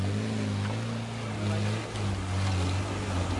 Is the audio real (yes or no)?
yes